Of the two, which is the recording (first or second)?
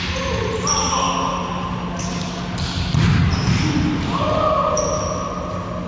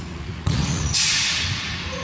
first